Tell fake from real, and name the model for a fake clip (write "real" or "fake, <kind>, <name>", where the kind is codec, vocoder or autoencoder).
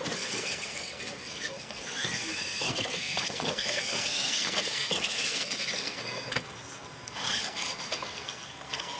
fake, codec, SNAC